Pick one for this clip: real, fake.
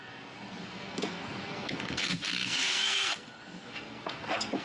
fake